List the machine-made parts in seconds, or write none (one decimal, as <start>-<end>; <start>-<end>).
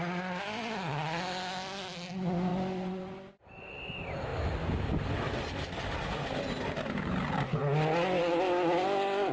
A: none